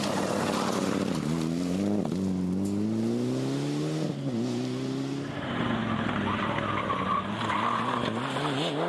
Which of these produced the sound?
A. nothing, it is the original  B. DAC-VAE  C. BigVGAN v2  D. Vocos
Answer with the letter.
A